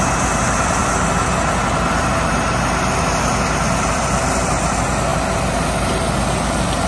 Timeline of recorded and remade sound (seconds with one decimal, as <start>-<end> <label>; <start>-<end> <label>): 0.0-6.9 recorded